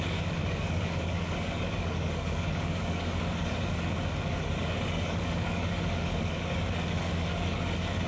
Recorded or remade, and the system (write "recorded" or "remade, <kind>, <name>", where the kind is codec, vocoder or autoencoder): remade, codec, DAC